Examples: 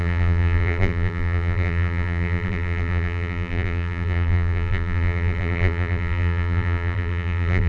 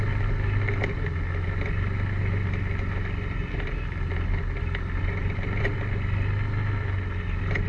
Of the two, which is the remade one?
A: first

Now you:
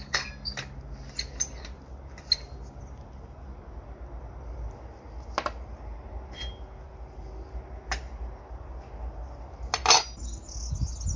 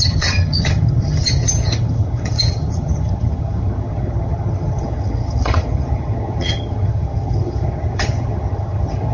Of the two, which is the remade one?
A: second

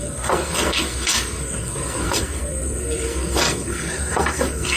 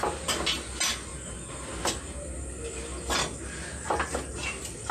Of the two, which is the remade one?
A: first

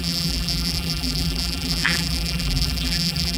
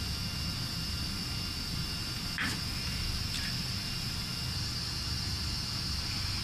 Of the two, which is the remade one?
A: first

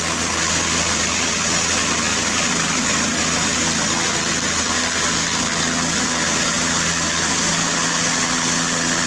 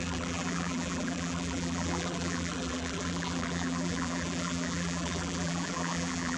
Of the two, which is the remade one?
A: second